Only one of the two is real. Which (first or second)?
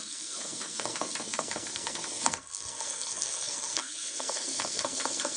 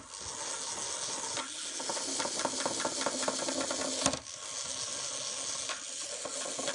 second